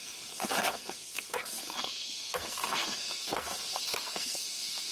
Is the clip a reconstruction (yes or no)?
yes